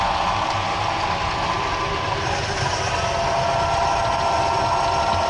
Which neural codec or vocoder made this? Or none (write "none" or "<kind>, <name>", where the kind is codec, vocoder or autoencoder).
none